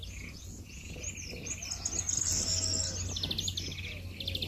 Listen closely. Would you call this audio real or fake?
real